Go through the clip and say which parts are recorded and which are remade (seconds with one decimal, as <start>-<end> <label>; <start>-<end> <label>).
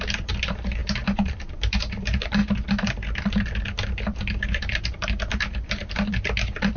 0.0-2.4 remade; 2.4-3.3 recorded; 3.3-6.8 remade